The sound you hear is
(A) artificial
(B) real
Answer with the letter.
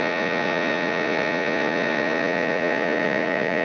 A